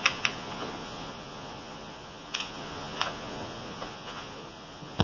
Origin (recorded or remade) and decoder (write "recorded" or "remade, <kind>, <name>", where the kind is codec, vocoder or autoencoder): remade, vocoder, Vocos